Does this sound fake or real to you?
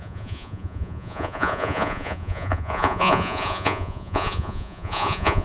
fake